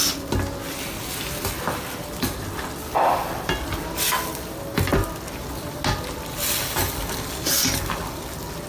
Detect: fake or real real